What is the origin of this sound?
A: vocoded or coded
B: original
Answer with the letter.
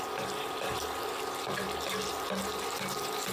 B